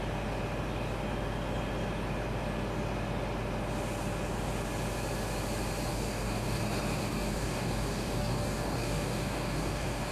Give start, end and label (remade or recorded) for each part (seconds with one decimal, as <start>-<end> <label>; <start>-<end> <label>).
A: 0.0-5.9 recorded; 5.9-6.6 remade; 6.6-7.0 recorded; 7.0-10.1 remade